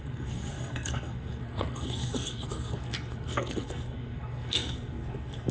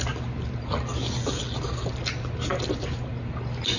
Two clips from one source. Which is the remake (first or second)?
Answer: first